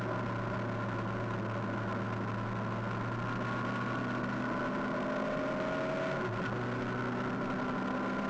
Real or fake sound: real